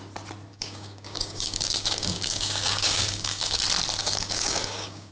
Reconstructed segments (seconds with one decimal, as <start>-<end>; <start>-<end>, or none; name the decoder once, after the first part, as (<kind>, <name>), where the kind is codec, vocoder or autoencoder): 0.5-3.6 (codec, DAC); 4.0-5.1